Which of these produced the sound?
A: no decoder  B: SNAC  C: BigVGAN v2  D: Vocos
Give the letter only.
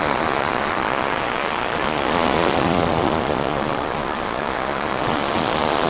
D